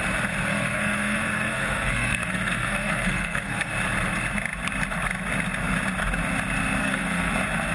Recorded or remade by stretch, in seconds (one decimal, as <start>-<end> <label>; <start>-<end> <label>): 0.0-0.5 recorded; 0.5-3.7 remade; 3.7-6.8 recorded; 6.8-7.3 remade; 7.3-7.7 recorded